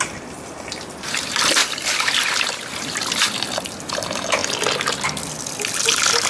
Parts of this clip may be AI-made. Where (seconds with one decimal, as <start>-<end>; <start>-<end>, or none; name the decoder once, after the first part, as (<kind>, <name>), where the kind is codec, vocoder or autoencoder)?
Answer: 1.6-2.7 (vocoder, BigVGAN v2)